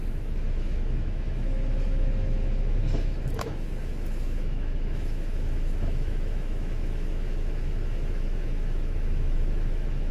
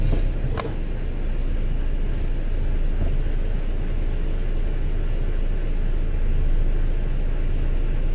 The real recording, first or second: second